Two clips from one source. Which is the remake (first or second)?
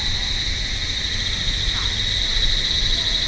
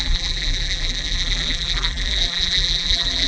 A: second